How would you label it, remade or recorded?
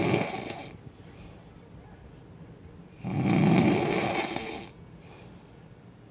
recorded